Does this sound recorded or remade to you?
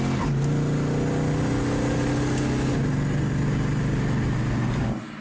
recorded